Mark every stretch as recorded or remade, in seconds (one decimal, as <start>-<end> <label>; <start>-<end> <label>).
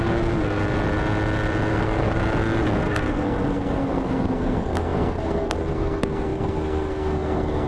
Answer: 0.0-0.6 remade; 0.6-1.7 recorded; 1.7-2.2 remade; 2.2-2.8 recorded; 2.8-7.7 remade